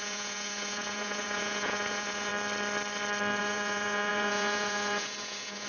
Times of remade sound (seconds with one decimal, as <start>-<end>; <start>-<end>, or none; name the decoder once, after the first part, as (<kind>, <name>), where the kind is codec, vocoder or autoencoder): 0.0-2.3 (vocoder, Vocos); 3.4-5.7